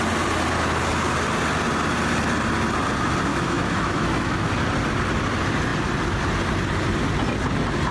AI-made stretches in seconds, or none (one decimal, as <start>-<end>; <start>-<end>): 3.3-4.5